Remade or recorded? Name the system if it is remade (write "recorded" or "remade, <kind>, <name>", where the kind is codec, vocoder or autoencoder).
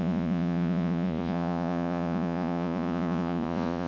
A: remade, vocoder, Vocos